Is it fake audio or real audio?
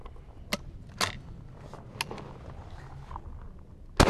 real